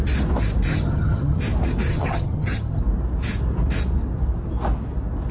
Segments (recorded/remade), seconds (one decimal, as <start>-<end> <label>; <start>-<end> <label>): 0.0-0.7 recorded; 0.7-1.4 remade; 1.4-1.9 recorded; 1.9-2.8 remade; 2.8-5.3 recorded